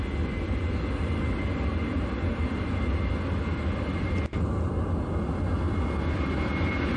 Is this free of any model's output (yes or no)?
yes